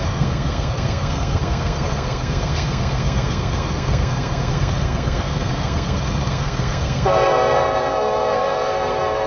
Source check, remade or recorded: remade